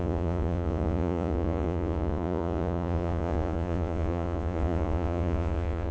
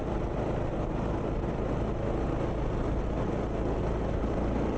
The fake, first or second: first